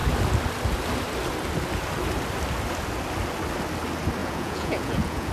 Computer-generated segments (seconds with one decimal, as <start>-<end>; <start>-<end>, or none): 4.2-5.3